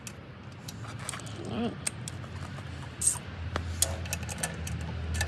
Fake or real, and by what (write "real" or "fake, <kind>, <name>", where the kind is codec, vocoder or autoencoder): real